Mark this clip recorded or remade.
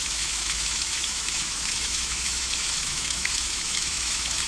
remade